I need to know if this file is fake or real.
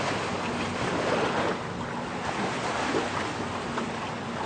real